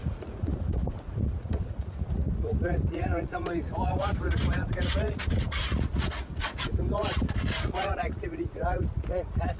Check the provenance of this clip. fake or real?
fake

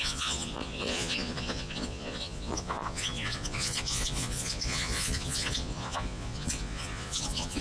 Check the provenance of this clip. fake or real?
fake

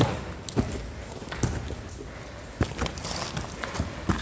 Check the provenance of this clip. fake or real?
real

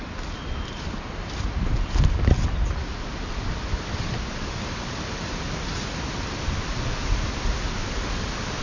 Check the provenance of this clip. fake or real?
real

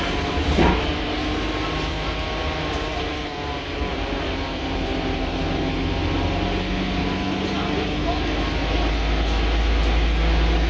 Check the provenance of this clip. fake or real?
real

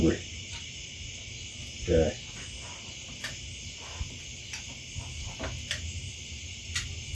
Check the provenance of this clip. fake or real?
real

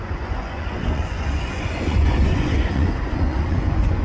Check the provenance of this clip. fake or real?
fake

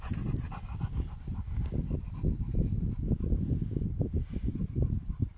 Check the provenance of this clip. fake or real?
real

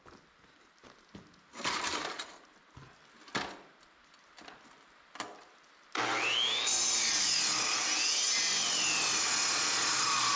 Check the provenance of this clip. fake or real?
real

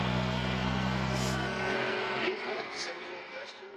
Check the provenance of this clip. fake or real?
fake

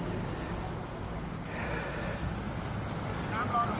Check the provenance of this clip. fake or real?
real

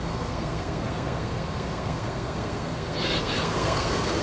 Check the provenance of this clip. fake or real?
fake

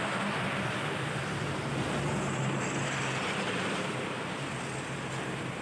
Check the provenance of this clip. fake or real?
fake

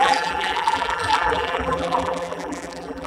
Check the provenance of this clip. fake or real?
fake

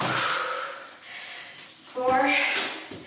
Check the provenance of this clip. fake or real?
real